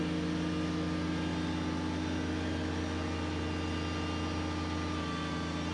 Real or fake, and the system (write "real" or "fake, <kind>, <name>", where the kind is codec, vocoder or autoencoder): real